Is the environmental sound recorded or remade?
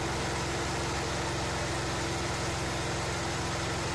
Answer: recorded